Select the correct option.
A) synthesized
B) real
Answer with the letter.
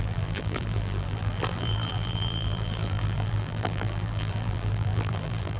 A